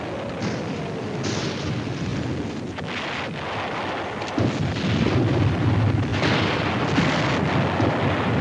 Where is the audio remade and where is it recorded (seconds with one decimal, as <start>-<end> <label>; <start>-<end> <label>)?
0.0-8.4 recorded